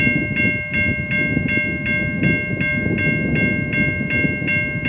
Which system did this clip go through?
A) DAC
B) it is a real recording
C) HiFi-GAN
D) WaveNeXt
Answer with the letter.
B